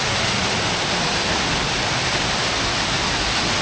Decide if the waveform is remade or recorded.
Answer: recorded